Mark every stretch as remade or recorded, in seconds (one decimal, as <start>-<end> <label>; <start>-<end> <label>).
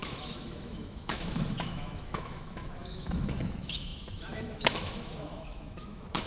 0.0-6.3 remade